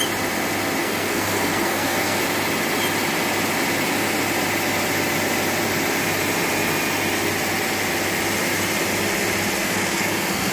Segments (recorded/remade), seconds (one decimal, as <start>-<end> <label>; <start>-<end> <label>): 0.0-0.8 recorded; 0.8-2.2 remade; 2.2-9.6 recorded; 9.6-10.5 remade